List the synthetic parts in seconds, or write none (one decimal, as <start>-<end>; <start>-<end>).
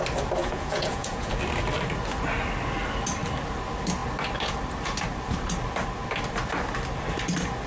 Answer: 0.4-1.4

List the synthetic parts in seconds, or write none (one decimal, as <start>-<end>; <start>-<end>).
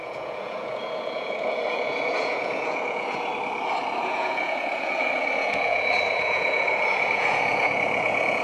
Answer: 0.0-3.3; 4.0-8.4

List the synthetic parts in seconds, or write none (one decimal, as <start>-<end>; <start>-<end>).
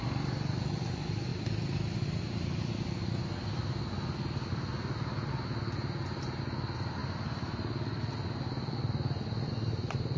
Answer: none